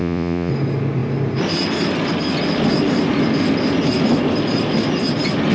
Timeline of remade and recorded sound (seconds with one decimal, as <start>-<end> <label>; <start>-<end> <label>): 0.0-0.5 remade; 0.5-5.5 recorded